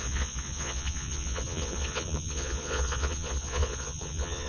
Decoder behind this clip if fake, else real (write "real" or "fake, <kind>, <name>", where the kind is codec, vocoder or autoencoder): fake, vocoder, Vocos